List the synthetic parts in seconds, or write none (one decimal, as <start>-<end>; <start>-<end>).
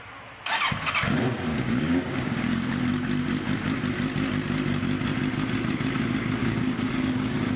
1.5-2.8; 6.4-7.6